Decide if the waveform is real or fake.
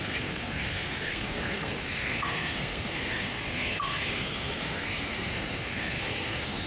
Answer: fake